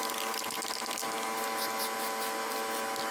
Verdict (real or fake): real